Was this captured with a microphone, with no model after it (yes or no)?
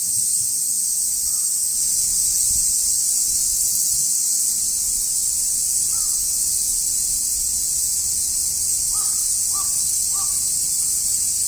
yes